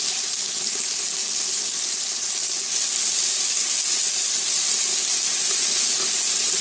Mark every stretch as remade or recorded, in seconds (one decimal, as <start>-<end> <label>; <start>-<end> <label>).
0.0-6.6 recorded